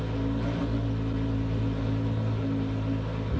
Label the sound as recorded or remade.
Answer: recorded